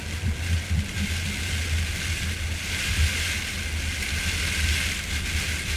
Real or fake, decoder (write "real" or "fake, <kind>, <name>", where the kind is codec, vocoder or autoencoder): real